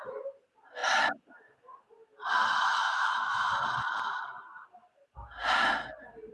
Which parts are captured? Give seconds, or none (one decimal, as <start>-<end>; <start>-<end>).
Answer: 0.0-2.8; 3.5-6.3